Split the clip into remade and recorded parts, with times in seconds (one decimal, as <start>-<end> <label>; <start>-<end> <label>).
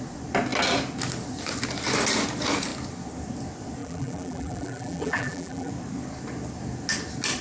0.0-3.8 recorded; 3.8-5.7 remade; 5.7-7.4 recorded